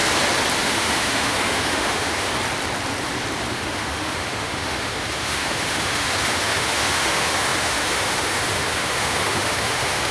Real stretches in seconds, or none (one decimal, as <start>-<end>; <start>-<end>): 0.0-0.6; 2.3-3.5